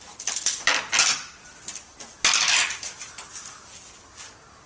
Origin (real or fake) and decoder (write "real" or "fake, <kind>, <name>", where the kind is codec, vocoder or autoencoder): real